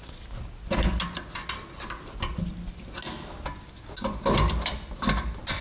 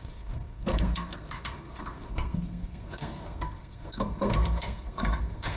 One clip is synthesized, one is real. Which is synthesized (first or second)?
second